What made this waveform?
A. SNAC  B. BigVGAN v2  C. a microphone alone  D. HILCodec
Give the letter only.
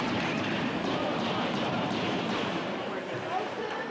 B